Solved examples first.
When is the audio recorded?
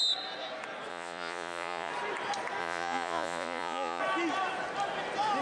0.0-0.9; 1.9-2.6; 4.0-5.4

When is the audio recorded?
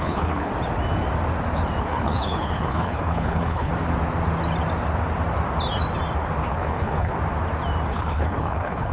0.5-1.8; 3.7-6.5; 7.1-7.9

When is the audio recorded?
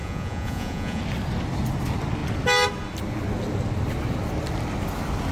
1.0-5.3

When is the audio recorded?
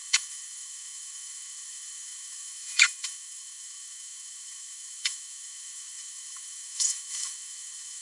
none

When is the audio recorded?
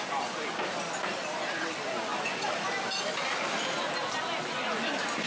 0.0-5.3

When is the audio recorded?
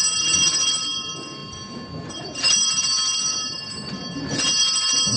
none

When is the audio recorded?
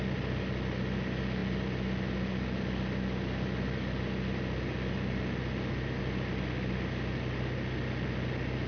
0.0-8.7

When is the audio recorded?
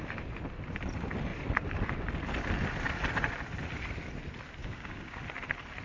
0.0-4.6; 5.2-5.8